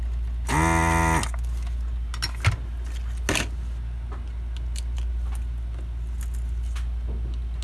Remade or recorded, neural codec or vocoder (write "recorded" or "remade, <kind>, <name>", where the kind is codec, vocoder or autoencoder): recorded